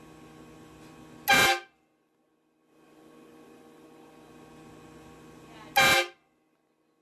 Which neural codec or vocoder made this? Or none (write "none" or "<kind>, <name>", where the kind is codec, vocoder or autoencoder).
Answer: none